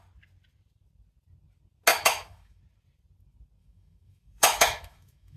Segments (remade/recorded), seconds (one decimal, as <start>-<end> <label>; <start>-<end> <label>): 0.0-1.9 recorded; 1.9-2.6 remade; 2.6-3.6 recorded; 3.6-5.4 remade